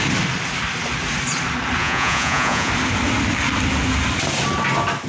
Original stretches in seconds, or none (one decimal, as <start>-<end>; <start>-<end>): 0.0-1.8; 2.7-5.1